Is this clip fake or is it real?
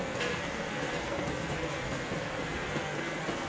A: fake